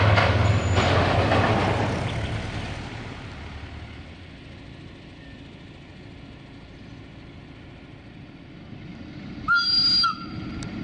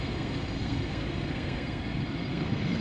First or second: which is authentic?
first